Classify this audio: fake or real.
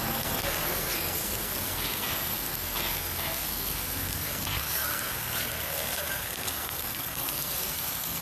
fake